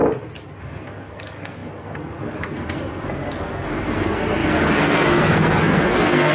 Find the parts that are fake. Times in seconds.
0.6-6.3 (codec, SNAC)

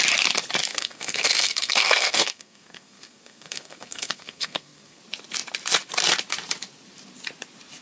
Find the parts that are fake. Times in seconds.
0.7-5.0 (codec, SNAC)

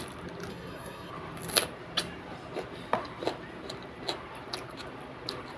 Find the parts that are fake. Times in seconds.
0.5-1.1 (codec, SNAC)